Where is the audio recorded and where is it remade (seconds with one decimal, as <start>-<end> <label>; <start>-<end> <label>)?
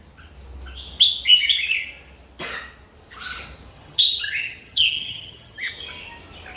0.0-3.7 recorded; 3.7-5.7 remade; 5.7-6.6 recorded